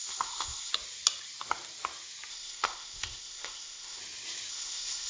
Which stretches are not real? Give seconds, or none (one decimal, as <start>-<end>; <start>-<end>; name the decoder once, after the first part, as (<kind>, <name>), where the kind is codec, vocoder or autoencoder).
0.0-0.7 (codec, ZipCodec); 2.3-4.0; 4.5-5.1